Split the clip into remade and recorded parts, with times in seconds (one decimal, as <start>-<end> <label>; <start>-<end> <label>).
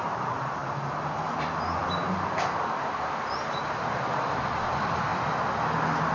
0.0-5.1 remade; 5.1-6.1 recorded